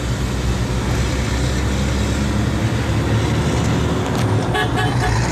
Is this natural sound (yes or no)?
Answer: yes